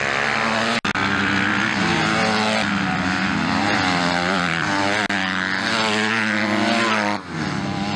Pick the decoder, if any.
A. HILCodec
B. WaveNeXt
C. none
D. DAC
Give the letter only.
C